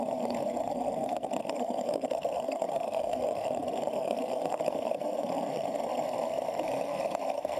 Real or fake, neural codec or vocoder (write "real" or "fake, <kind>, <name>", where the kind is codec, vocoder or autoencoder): fake, codec, SNAC